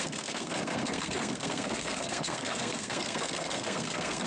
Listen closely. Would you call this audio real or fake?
fake